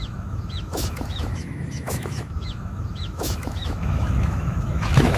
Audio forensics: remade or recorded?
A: remade